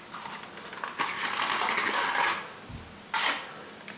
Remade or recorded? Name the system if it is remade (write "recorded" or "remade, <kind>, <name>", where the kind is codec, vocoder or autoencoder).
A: recorded